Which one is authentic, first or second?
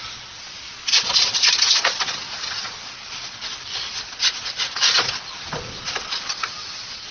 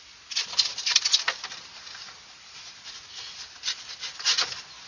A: second